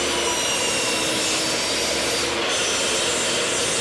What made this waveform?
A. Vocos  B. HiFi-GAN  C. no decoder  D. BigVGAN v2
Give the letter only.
C